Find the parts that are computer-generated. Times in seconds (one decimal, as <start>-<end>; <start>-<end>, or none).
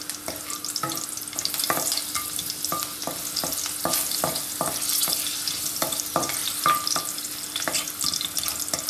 none